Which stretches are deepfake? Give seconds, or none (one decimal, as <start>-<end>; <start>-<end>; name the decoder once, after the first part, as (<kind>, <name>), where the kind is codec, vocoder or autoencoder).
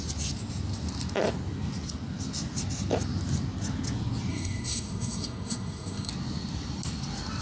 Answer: 4.3-6.1 (codec, SNAC)